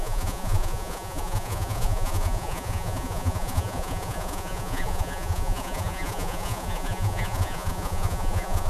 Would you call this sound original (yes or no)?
no